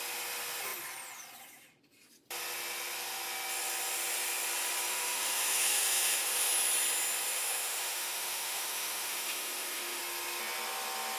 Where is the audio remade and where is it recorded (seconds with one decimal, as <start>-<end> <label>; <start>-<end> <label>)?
0.0-4.9 recorded; 4.9-6.5 remade; 6.5-7.3 recorded; 7.3-10.0 remade; 10.0-11.2 recorded